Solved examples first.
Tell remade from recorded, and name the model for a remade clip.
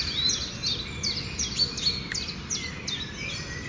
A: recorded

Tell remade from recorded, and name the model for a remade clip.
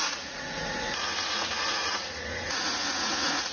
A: remade, vocoder, Vocos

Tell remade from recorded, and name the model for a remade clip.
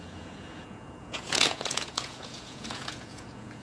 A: remade, vocoder, Vocos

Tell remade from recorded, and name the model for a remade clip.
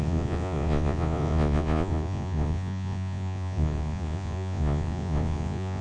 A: remade, vocoder, Vocos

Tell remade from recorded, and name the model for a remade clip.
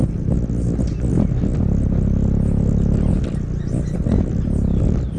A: recorded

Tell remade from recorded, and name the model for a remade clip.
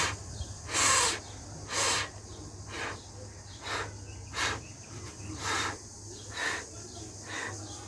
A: recorded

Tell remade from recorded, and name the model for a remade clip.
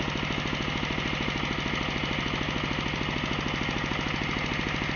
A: recorded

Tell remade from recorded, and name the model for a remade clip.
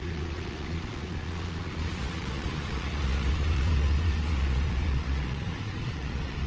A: remade, vocoder, Vocos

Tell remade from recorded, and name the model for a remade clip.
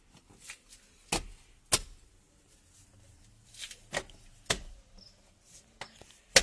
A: recorded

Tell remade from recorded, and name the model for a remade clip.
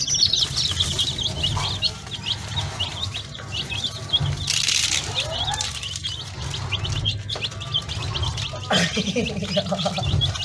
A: recorded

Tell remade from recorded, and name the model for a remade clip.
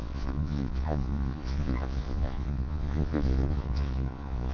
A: remade, vocoder, Vocos